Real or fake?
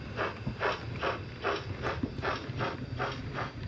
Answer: real